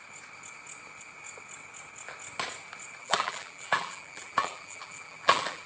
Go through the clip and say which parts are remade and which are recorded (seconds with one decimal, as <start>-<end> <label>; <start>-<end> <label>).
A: 0.0-3.0 recorded; 3.0-5.7 remade